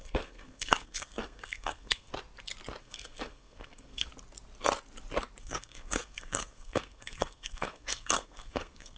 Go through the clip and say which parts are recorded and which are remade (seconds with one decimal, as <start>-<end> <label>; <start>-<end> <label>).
0.0-2.1 remade; 2.1-2.8 recorded; 2.8-4.1 remade; 4.1-5.4 recorded; 5.4-9.0 remade